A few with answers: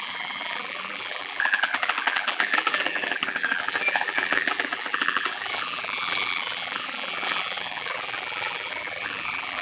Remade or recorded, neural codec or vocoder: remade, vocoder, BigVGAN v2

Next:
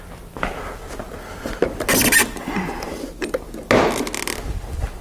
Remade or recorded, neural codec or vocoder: recorded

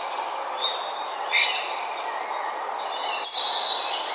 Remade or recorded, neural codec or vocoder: recorded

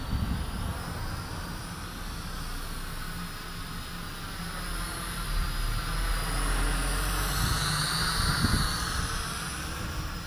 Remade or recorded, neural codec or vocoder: recorded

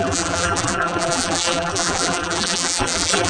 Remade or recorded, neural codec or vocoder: remade, vocoder, BigVGAN v2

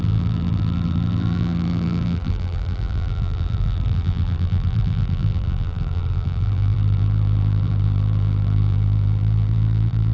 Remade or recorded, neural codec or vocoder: remade, vocoder, BigVGAN v2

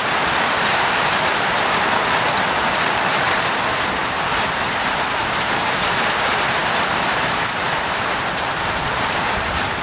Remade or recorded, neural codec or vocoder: remade, vocoder, BigVGAN v2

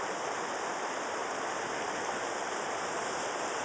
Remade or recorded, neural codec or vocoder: remade, vocoder, BigVGAN v2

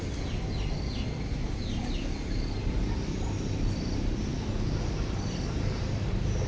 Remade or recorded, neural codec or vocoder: recorded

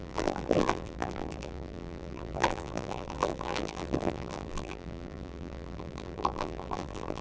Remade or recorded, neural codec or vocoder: remade, vocoder, BigVGAN v2